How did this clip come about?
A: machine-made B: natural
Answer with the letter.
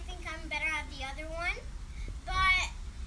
B